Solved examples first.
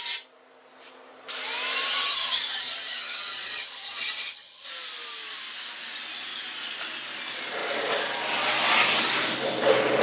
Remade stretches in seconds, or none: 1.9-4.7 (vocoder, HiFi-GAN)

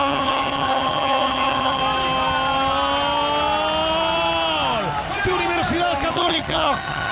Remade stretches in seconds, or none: 0.0-1.8 (vocoder, HiFi-GAN); 6.1-7.1

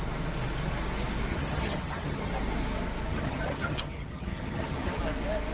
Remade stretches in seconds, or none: 1.3-2.3 (vocoder, HiFi-GAN); 3.1-5.0

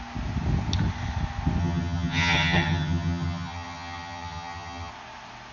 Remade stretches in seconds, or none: 1.6-4.9 (vocoder, HiFi-GAN)

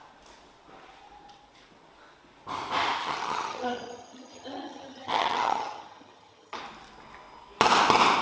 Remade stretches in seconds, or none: 3.0-6.6 (vocoder, HiFi-GAN)